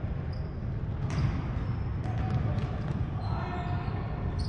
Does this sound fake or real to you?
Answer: real